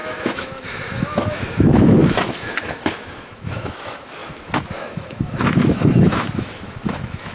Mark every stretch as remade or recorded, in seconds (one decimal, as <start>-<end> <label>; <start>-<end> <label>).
0.0-7.3 remade